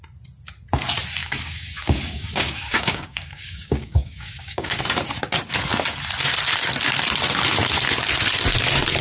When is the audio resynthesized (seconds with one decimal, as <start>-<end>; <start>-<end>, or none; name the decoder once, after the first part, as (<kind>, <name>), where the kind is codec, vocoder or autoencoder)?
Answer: 1.2-4.8 (codec, DAC)